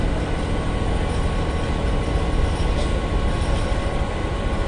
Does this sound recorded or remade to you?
recorded